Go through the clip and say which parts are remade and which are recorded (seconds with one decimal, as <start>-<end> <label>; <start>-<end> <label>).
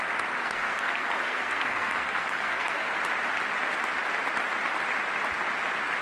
0.0-0.4 recorded; 0.4-3.0 remade; 3.0-6.0 recorded